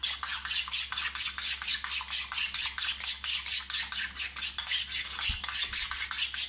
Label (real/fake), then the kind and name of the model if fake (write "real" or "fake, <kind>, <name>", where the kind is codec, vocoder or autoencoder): real